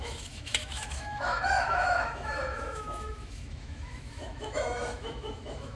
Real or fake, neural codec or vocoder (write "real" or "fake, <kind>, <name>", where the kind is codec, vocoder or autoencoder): fake, autoencoder, DAC-VAE